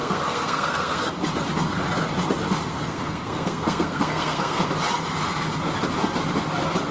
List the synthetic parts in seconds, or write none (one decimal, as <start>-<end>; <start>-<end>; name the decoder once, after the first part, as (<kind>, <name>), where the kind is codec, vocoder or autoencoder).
0.0-1.1 (codec, SNAC); 2.7-4.7